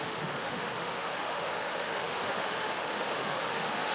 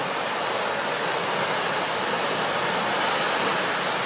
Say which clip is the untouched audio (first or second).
second